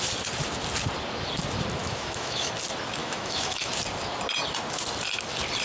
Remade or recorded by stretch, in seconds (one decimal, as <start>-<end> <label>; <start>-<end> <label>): 0.0-1.8 recorded; 1.8-2.5 remade; 2.5-3.0 recorded; 3.0-3.7 remade; 3.7-5.6 recorded